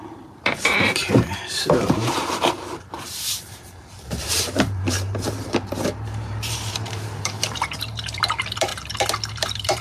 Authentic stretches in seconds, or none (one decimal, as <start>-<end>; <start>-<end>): 8.7-9.3

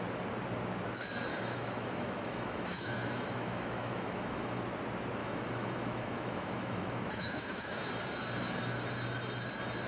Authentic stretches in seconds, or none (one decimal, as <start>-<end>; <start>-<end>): 0.0-1.3; 4.6-5.2; 7.9-9.9

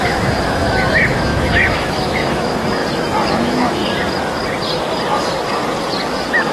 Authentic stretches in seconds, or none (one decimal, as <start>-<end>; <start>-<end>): 2.8-3.3; 3.8-6.5

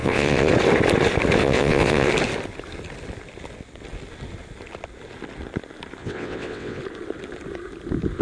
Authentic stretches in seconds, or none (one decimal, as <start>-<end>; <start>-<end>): 0.5-1.4; 2.1-6.0; 6.8-8.2

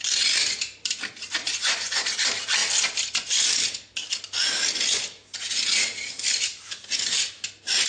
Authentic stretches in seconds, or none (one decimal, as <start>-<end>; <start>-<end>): 0.0-1.4; 2.0-7.9